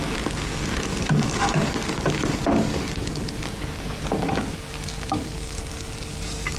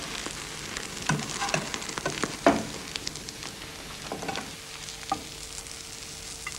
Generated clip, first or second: first